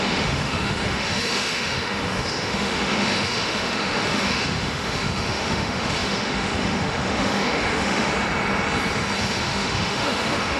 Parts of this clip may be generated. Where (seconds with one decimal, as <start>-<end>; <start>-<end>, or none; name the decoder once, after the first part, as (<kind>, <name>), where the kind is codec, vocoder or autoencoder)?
0.0-8.1 (autoencoder, DAC-VAE); 9.2-10.6